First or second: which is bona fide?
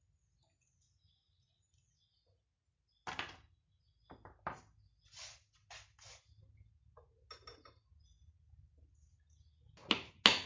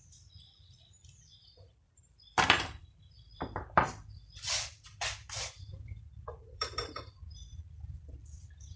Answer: first